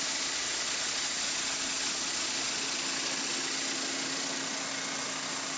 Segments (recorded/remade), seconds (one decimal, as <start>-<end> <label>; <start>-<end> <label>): 0.0-5.6 recorded